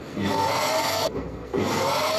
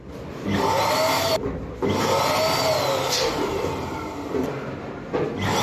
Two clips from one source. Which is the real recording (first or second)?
second